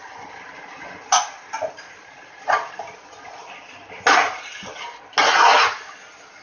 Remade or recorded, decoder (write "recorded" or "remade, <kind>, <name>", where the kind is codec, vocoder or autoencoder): recorded